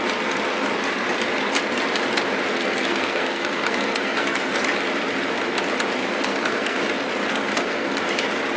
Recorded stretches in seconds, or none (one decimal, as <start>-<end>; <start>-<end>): 0.0-2.5; 4.5-6.0; 6.8-7.3; 7.9-8.6